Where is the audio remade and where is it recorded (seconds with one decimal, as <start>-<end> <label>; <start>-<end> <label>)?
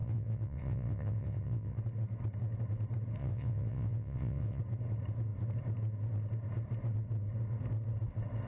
0.0-1.8 remade; 1.8-3.2 recorded; 3.2-4.6 remade; 4.6-8.5 recorded